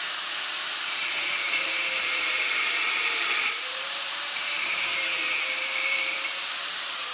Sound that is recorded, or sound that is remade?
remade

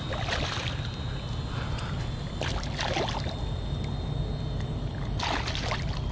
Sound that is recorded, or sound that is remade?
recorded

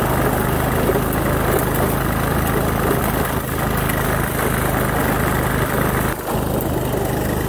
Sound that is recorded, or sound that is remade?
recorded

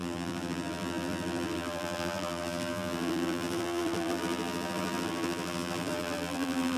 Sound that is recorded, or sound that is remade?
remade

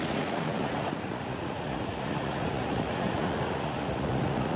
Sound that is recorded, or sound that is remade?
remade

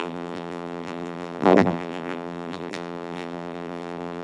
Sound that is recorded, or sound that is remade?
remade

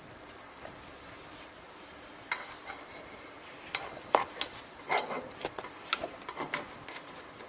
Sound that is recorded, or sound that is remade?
recorded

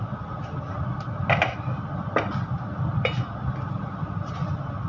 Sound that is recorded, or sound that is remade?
recorded